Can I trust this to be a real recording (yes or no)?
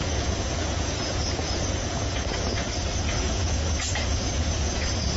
no